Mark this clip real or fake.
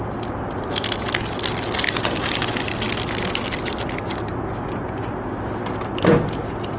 real